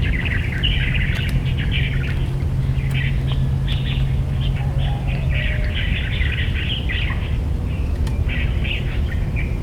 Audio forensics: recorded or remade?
recorded